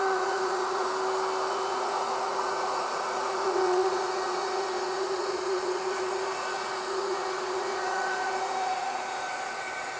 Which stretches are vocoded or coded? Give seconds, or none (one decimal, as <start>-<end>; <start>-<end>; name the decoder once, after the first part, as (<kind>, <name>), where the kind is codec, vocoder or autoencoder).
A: 0.0-0.9 (vocoder, Vocos); 1.5-10.0